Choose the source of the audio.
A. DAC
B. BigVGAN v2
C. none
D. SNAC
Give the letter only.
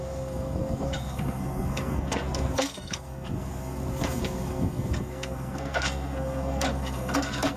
D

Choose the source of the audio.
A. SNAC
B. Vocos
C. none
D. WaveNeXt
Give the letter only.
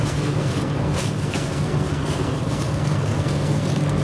A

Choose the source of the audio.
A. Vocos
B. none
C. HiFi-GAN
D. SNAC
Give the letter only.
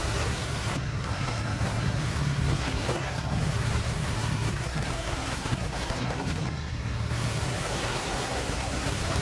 D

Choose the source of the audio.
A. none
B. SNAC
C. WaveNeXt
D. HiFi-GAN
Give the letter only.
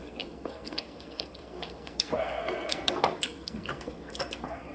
B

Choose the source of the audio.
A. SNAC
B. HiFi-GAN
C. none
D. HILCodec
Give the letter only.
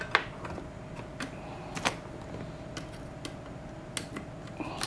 C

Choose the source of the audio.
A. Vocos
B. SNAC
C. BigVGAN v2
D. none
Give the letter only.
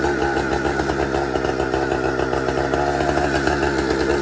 D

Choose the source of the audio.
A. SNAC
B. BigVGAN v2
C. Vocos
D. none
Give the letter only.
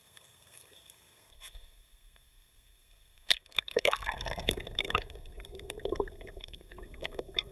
A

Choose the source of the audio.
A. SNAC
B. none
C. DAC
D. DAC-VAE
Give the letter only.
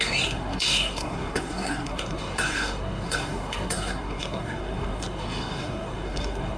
A